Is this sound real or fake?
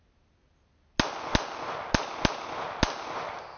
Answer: real